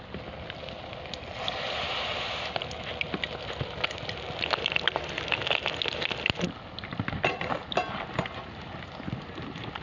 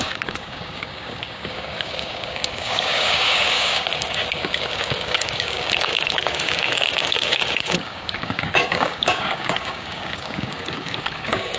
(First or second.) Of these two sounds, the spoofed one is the second